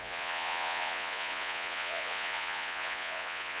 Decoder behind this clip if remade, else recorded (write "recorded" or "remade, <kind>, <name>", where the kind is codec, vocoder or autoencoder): remade, vocoder, Vocos